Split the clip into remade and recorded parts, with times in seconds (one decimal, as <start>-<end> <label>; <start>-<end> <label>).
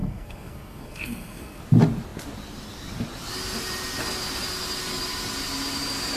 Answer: 0.0-1.6 remade; 1.6-6.2 recorded